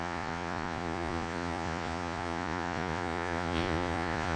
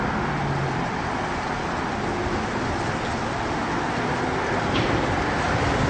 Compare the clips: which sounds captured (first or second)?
second